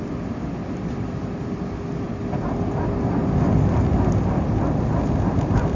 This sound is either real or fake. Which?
real